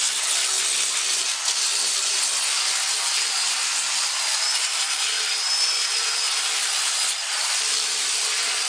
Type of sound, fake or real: real